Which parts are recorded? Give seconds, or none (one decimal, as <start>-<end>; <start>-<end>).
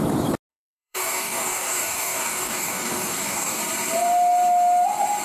0.0-0.5; 3.6-5.2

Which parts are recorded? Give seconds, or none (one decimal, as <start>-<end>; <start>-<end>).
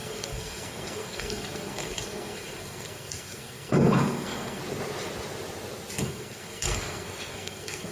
4.6-6.0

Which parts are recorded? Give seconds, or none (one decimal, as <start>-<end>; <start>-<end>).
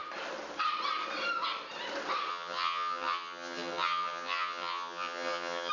0.0-2.3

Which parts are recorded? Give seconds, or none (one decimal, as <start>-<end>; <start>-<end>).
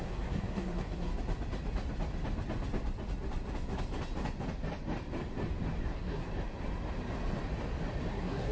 1.1-5.8; 6.3-8.1